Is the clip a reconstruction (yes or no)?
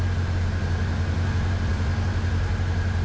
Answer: no